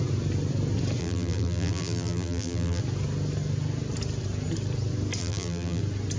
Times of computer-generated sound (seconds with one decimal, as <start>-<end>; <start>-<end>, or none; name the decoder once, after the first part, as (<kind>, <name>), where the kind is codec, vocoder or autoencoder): 1.0-2.8 (vocoder, BigVGAN v2); 5.2-5.8